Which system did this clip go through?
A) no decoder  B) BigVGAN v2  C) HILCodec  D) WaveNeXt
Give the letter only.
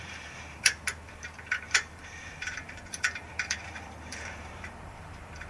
B